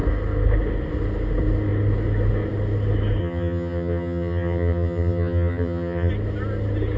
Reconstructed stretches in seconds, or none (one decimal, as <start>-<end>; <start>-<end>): 3.2-6.1